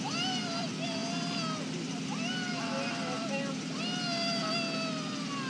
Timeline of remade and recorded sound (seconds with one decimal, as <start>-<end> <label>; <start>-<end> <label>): 0.0-5.5 recorded